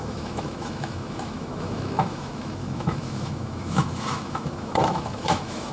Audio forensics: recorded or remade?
remade